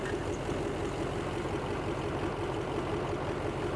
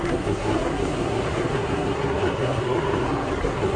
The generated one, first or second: second